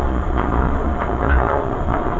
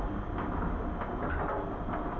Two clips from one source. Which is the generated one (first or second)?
first